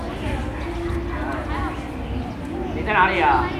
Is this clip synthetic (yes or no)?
no